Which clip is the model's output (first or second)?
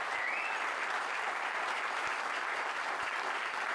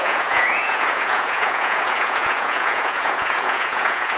second